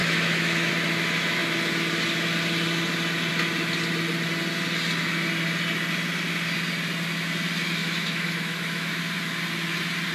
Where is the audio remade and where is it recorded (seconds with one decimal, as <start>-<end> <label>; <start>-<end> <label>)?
0.0-0.7 remade; 0.7-7.8 recorded; 7.8-9.0 remade; 9.0-10.1 recorded